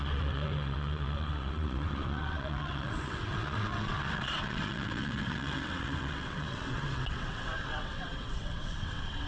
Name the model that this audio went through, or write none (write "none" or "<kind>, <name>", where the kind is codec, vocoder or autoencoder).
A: vocoder, WaveNeXt